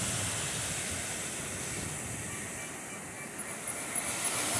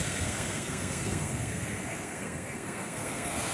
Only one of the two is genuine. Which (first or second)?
first